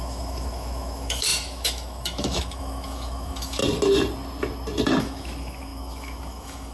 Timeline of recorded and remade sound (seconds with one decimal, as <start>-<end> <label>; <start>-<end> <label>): 0.0-3.6 remade; 3.6-5.0 recorded; 5.0-6.7 remade